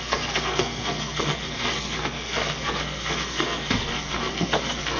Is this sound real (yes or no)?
no